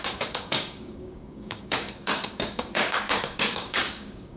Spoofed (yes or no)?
yes